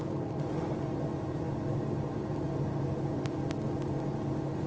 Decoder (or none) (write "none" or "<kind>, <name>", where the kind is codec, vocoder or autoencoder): none